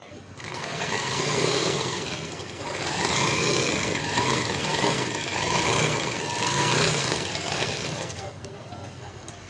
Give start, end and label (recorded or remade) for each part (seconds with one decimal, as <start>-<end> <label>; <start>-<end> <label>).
0.0-9.5 remade